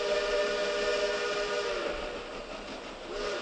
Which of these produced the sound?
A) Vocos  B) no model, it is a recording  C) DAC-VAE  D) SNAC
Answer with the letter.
B